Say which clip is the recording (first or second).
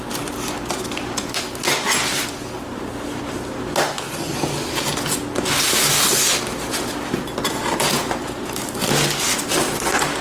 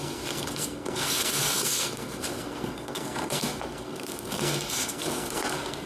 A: first